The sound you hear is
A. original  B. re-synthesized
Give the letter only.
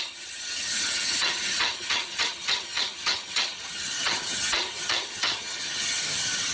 B